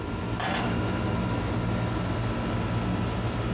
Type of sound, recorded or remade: recorded